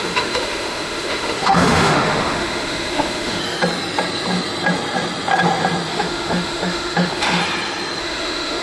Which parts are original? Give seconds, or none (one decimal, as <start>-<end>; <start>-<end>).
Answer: 3.4-5.9; 7.4-8.0